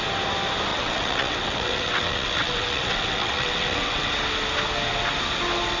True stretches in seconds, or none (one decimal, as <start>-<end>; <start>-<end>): 0.0-0.7; 4.1-5.8